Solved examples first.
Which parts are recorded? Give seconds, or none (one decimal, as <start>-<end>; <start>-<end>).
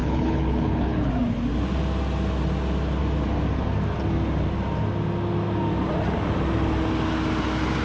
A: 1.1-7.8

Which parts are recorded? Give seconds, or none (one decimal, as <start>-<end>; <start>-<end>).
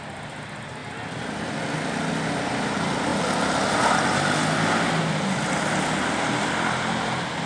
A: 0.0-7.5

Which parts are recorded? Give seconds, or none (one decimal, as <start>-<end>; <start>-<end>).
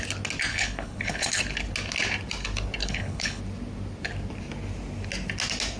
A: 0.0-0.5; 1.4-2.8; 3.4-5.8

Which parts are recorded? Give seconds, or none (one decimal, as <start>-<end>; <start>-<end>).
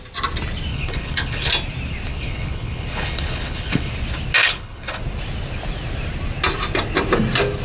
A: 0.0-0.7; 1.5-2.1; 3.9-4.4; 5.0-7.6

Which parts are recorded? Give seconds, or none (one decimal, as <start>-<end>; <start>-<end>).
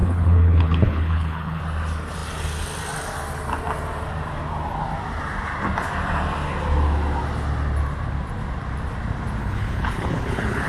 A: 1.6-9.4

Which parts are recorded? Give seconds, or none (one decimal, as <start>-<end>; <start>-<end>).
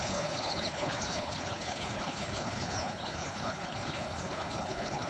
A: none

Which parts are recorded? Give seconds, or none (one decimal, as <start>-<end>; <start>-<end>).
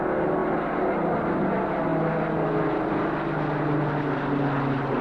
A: 0.0-5.0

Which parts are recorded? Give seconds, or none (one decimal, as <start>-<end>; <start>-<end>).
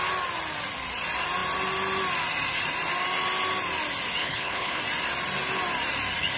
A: 0.0-4.2; 4.8-6.4